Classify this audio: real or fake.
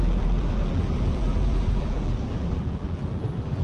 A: fake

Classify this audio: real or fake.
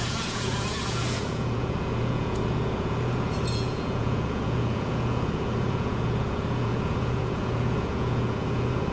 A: fake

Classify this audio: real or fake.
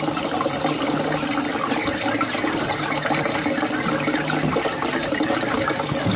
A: real